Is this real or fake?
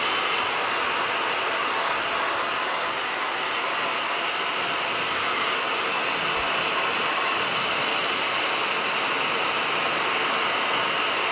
real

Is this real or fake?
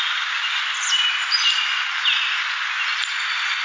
real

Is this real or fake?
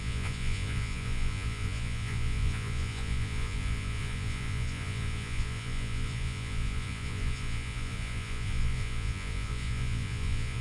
fake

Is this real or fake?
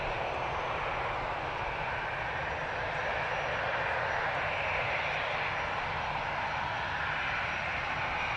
real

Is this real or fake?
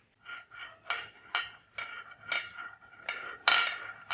real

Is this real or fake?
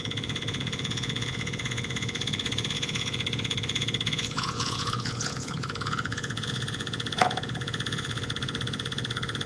fake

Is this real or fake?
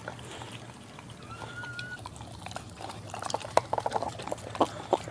real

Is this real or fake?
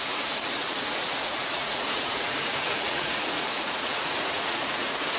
fake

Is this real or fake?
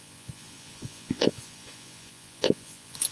fake